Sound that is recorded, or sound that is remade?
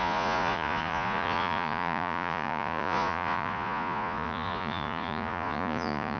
remade